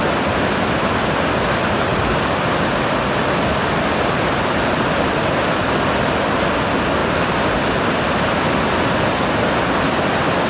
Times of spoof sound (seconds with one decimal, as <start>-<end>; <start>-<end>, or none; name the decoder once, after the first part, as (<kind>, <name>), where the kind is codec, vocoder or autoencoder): none